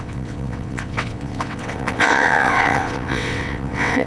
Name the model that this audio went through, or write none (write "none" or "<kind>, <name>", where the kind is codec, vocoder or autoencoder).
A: vocoder, WaveNeXt